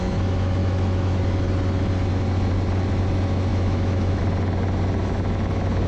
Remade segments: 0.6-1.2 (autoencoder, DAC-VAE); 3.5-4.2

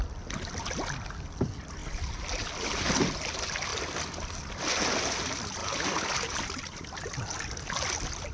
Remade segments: none

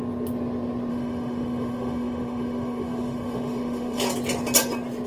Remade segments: 0.9-4.0 (autoencoder, DAC-VAE)

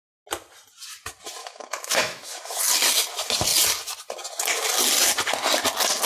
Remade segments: 1.4-2.6 (autoencoder, DAC-VAE)

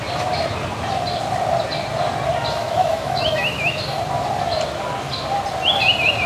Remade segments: 2.6-3.8 (autoencoder, DAC-VAE)

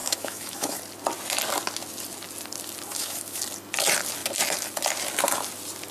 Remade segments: 0.0-0.8 (autoencoder, DAC-VAE); 2.9-3.4